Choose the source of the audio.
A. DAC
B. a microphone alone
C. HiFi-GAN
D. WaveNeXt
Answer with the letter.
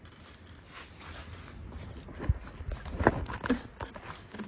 B